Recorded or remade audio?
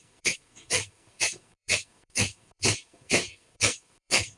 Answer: remade